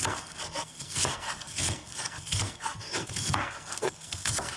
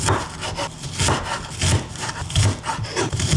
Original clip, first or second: second